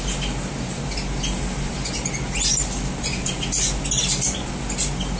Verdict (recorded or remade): recorded